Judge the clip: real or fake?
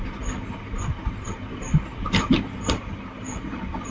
real